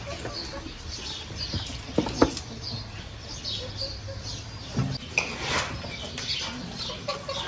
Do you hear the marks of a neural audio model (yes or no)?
no